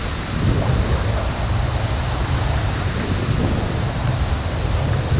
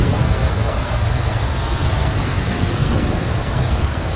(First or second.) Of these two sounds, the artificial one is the second